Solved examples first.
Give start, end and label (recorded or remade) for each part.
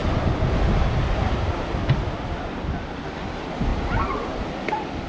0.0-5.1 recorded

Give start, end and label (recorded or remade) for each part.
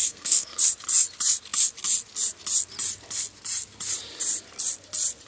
0.0-0.6 remade; 0.6-5.3 recorded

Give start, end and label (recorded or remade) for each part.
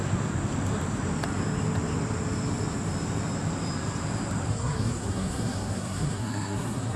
0.0-4.5 recorded; 4.5-7.0 remade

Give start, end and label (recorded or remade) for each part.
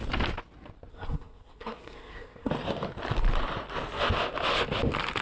0.0-0.9 recorded; 0.9-2.5 remade; 2.5-5.2 recorded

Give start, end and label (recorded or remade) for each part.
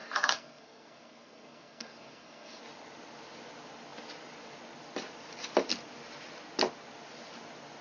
0.0-2.6 remade; 2.6-7.8 recorded